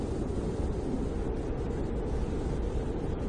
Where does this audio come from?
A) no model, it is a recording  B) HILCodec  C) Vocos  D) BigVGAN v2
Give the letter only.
A